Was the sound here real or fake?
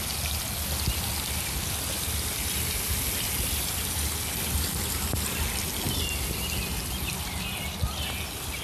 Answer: real